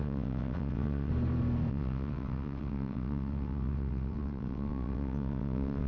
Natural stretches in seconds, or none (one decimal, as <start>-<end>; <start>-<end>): 1.1-1.7